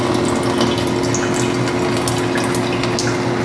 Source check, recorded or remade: recorded